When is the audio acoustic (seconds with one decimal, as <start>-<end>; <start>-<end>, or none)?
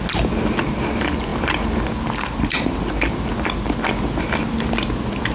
0.0-5.3